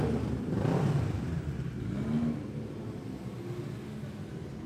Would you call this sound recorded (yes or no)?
yes